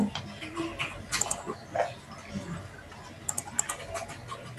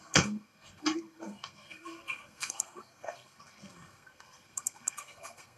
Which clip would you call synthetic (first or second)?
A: second